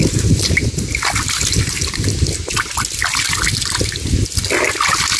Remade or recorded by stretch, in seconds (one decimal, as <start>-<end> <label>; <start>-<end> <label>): 0.0-2.4 remade; 2.4-5.2 recorded